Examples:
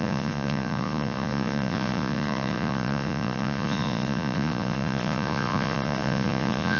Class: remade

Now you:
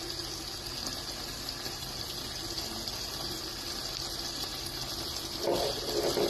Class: recorded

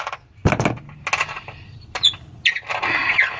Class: recorded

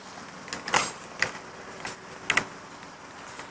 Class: recorded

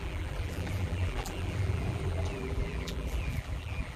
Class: remade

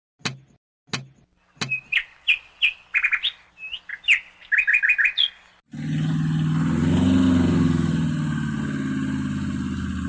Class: recorded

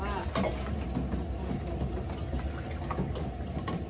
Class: recorded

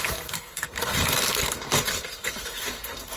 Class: remade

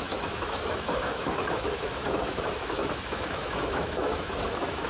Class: remade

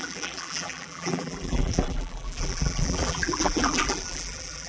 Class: remade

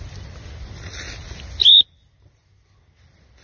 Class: recorded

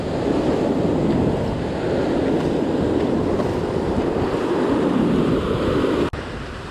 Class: recorded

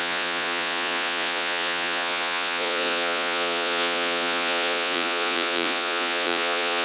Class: remade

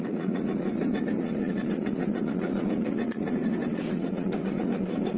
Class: remade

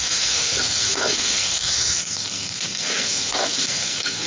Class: remade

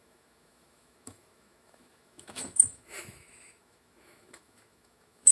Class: remade